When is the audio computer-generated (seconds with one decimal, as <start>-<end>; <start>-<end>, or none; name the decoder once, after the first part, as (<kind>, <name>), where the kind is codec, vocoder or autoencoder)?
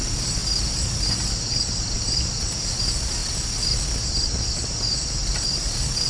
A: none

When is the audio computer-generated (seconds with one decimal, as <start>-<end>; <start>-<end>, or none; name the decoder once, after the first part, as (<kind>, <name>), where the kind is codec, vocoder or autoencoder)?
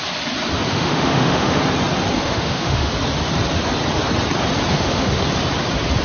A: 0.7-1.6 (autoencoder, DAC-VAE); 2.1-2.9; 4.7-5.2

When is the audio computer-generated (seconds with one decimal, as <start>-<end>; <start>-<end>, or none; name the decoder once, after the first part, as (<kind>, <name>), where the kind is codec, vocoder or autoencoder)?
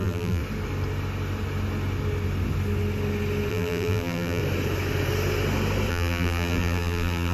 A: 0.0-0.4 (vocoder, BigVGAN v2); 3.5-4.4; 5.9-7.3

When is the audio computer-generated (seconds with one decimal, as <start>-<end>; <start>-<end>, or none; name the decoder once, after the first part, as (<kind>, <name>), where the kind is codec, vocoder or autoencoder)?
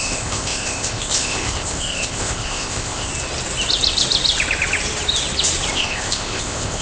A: 0.0-3.1 (codec, ZipCodec); 5.7-6.8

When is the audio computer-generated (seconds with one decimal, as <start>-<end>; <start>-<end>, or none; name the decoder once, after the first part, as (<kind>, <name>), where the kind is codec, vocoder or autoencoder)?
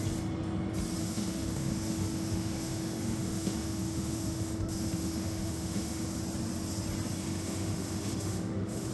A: 1.0-6.2 (autoencoder, DAC-VAE); 7.2-8.9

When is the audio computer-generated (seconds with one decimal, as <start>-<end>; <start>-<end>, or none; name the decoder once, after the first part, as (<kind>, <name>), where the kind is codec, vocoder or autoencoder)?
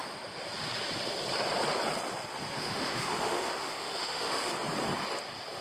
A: 2.5-4.5 (autoencoder, DAC-VAE)